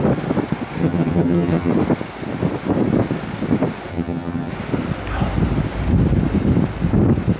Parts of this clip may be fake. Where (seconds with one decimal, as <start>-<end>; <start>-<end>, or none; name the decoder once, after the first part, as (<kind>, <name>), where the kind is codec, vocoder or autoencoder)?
0.8-1.7 (vocoder, HiFi-GAN); 3.9-4.5